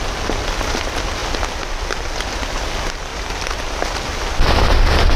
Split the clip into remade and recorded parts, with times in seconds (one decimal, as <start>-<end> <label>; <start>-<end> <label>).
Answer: 0.0-1.2 recorded; 1.2-2.4 remade; 2.4-3.1 recorded; 3.1-4.0 remade; 4.0-5.2 recorded